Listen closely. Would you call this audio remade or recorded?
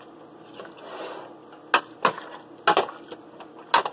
recorded